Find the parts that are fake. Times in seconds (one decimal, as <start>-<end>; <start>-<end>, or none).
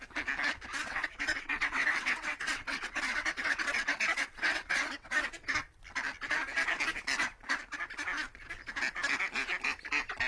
0.8-5.5